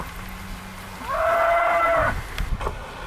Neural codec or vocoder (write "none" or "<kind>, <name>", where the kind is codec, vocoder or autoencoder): none